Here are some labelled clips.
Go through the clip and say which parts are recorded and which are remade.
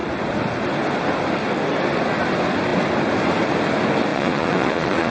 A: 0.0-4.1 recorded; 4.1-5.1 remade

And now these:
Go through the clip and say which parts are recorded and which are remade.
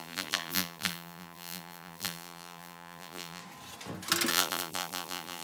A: 0.0-3.4 remade; 3.4-4.3 recorded; 4.3-5.4 remade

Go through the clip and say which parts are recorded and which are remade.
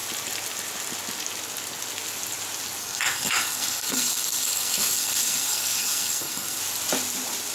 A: 0.0-2.8 recorded; 2.8-6.6 remade; 6.6-7.5 recorded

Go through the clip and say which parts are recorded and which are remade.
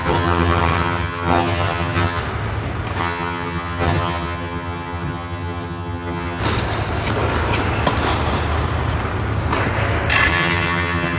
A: 0.0-2.2 remade; 2.2-3.0 recorded; 3.0-6.4 remade; 6.4-10.3 recorded; 10.3-11.2 remade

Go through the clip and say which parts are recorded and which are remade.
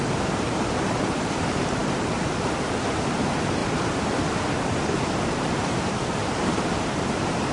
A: 0.0-3.6 remade; 3.6-5.2 recorded; 5.2-7.5 remade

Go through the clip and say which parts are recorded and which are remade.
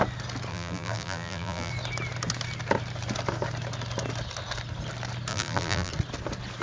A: 0.0-0.5 recorded; 0.5-1.7 remade; 1.7-5.3 recorded; 5.3-5.9 remade; 5.9-6.6 recorded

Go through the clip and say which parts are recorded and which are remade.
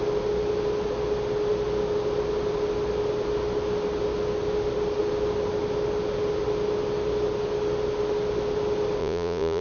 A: 0.0-9.0 recorded; 9.0-9.6 remade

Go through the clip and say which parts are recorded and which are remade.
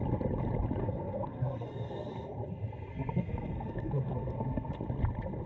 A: 0.0-0.8 recorded; 0.8-2.1 remade; 2.1-2.9 recorded; 2.9-4.7 remade; 4.7-5.5 recorded